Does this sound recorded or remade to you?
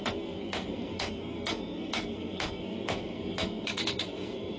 remade